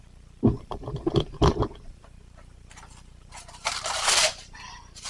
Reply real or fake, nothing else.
fake